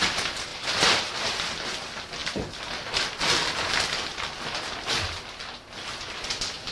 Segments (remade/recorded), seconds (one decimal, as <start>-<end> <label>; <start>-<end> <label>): 0.0-0.5 recorded; 0.5-1.0 remade; 1.0-6.7 recorded